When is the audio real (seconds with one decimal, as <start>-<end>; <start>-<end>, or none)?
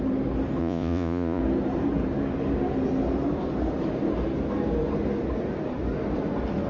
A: 0.0-0.6; 1.4-6.7